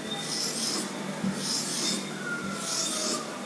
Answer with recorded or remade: recorded